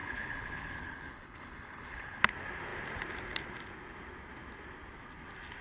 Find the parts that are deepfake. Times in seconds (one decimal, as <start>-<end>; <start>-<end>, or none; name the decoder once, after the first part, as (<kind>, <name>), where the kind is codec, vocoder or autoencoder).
0.0-2.2 (codec, HILCodec)